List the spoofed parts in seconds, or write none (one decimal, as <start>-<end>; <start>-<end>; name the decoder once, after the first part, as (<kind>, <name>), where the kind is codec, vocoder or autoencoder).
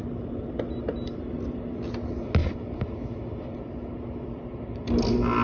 2.4-4.9 (vocoder, BigVGAN v2)